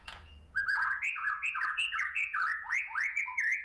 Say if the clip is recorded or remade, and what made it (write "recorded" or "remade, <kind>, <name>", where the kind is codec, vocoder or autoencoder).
remade, vocoder, Vocos